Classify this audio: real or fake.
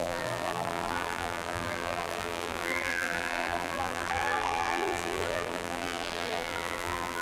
fake